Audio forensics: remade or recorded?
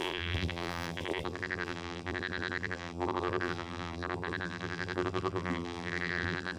remade